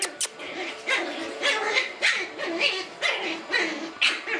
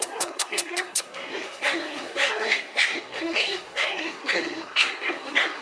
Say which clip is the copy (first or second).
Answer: second